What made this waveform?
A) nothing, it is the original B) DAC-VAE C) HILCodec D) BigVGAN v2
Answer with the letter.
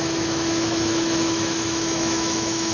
B